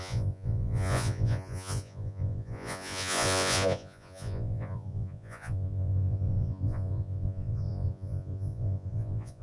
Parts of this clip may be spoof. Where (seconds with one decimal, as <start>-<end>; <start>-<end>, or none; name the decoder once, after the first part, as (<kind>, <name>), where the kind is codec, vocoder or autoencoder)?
0.0-9.4 (vocoder, Vocos)